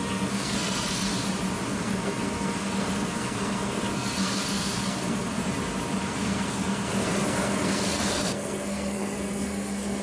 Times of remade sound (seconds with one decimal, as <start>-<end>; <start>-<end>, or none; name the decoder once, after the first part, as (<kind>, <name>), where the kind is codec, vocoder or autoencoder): 0.0-1.1 (codec, SNAC); 1.7-5.4; 6.0-10.0